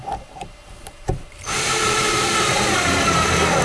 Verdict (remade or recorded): remade